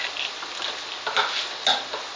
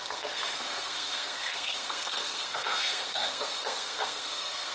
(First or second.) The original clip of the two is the first